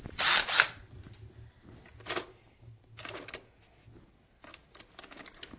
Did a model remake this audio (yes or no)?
no